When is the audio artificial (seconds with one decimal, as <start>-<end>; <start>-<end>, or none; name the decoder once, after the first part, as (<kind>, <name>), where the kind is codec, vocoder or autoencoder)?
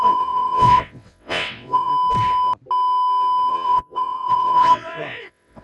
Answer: 0.0-1.9 (vocoder, WaveNeXt); 3.5-5.6